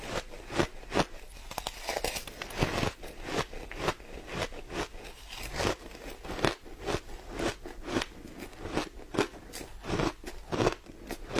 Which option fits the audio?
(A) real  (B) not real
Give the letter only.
A